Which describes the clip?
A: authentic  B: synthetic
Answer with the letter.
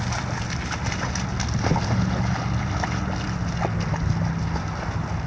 A